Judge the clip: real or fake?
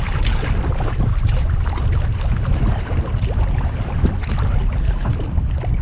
real